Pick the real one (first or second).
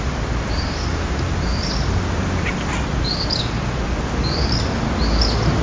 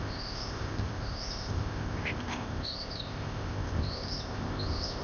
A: first